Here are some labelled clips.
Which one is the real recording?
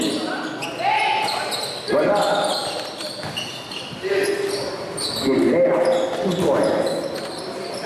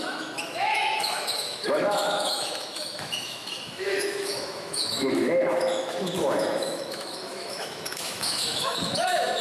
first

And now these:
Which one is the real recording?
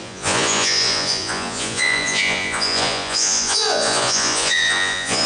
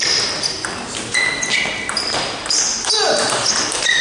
second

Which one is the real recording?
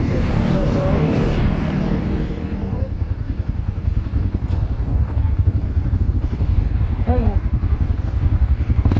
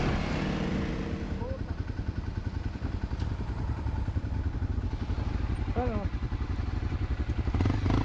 second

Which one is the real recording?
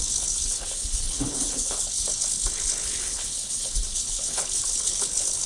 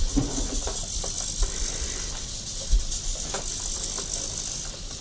second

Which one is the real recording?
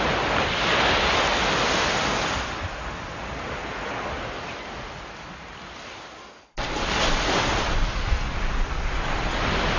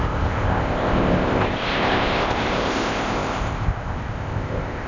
first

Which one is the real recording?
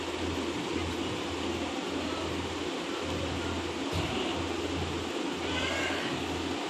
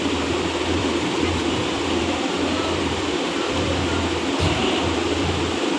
first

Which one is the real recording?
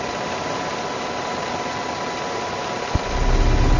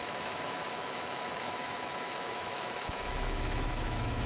first